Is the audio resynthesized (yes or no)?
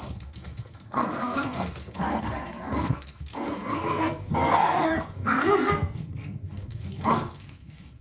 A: yes